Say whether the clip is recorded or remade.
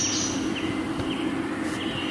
recorded